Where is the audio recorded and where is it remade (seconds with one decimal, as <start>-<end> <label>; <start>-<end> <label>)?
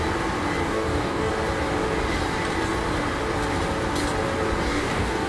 0.0-0.6 recorded; 0.6-1.3 remade; 1.3-4.7 recorded; 4.7-5.3 remade